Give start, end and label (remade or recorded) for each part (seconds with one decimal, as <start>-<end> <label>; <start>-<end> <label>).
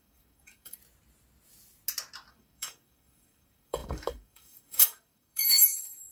0.0-0.8 remade; 0.8-2.3 recorded; 2.3-6.1 remade